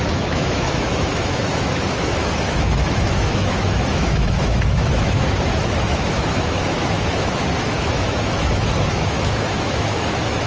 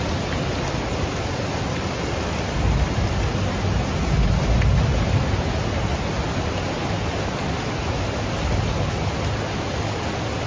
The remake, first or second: first